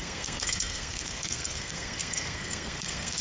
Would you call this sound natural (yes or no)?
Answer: no